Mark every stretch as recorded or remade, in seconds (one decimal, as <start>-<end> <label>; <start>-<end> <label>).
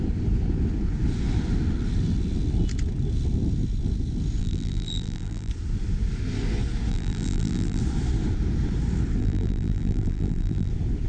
0.0-4.4 recorded; 4.4-5.5 remade; 5.5-6.9 recorded; 6.9-7.8 remade; 7.8-9.2 recorded; 9.2-10.7 remade; 10.7-11.1 recorded